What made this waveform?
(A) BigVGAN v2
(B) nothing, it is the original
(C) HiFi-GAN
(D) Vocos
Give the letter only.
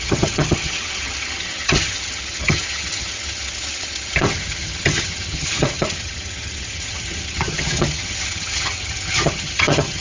C